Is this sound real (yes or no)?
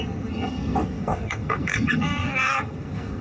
no